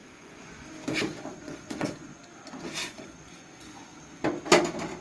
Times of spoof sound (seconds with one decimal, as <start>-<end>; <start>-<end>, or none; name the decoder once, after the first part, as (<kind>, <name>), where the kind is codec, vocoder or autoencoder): 0.0-0.7 (vocoder, Vocos); 1.3-2.2; 2.8-4.0